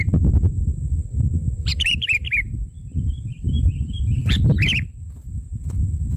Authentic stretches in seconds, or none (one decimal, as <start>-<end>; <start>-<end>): 0.0-1.4; 2.2-2.8; 3.9-6.2